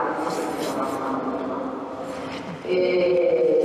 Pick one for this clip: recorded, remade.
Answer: recorded